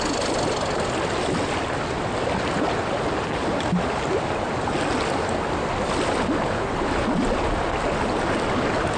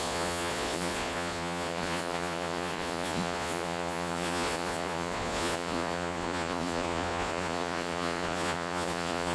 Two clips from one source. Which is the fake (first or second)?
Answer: second